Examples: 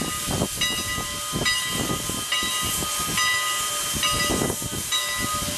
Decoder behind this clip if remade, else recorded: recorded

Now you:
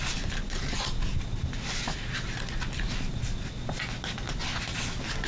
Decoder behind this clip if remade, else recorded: recorded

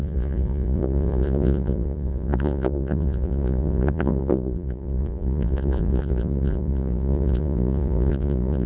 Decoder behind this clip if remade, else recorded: remade, vocoder, Vocos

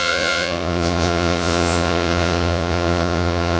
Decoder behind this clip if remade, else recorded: remade, vocoder, Vocos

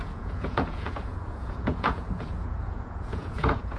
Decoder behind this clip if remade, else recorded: remade, vocoder, Vocos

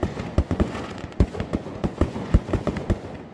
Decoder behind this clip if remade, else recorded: remade, vocoder, Vocos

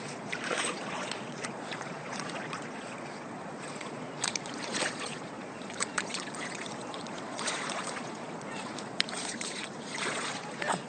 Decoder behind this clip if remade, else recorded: remade, vocoder, Vocos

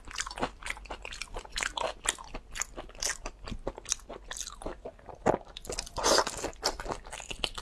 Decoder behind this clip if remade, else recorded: recorded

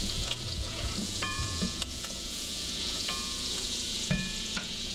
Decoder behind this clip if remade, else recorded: remade, vocoder, Vocos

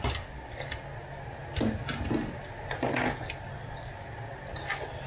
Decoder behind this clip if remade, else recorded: recorded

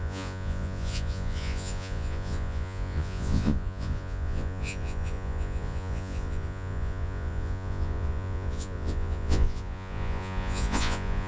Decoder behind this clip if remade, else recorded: remade, vocoder, Vocos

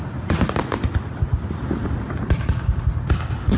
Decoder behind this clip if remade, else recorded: recorded